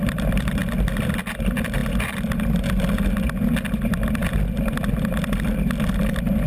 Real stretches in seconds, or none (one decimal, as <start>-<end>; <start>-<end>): 0.0-6.5